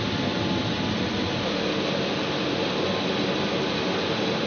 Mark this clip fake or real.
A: real